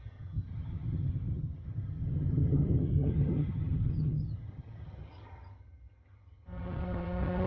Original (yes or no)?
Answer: no